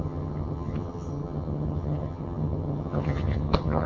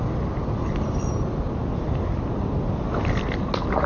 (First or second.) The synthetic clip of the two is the first